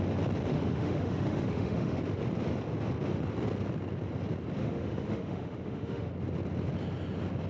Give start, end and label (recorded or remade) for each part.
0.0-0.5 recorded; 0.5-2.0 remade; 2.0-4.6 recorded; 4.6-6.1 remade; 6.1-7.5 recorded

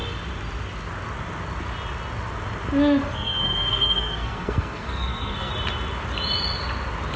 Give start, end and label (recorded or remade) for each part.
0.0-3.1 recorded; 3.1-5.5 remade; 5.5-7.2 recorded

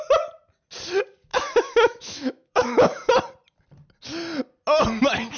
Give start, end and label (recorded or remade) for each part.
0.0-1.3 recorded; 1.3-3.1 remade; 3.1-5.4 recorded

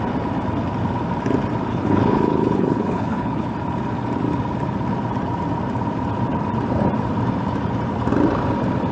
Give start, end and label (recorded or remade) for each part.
0.0-1.7 recorded; 1.7-3.5 remade; 3.5-8.9 recorded

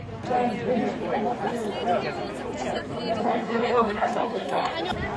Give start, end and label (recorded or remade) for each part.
0.0-3.2 recorded; 3.2-4.7 remade; 4.7-5.2 recorded

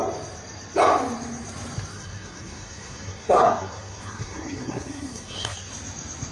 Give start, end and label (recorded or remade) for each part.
0.0-1.9 recorded; 1.9-5.7 remade; 5.7-6.3 recorded

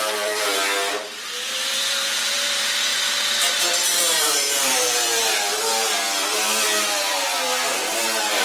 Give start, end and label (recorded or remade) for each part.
0.0-2.9 remade; 2.9-3.5 recorded; 3.5-8.4 remade

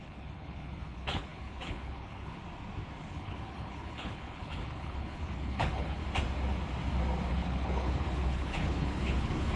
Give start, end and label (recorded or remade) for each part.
0.0-2.4 remade; 2.4-3.1 recorded; 3.1-6.0 remade; 6.0-7.3 recorded; 7.3-9.6 remade